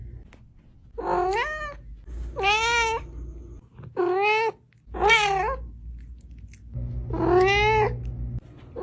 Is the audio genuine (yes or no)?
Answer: yes